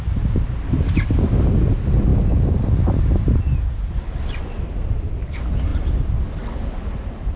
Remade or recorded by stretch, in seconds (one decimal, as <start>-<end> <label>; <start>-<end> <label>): 0.0-7.4 recorded